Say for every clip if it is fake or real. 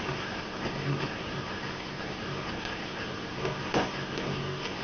fake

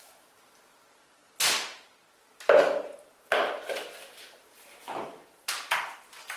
real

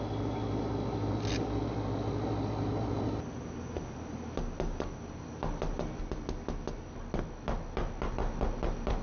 real